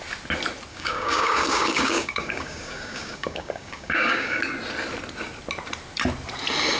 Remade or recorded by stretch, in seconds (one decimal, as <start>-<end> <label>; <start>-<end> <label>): 0.0-0.7 recorded; 0.7-4.4 remade; 4.4-6.8 recorded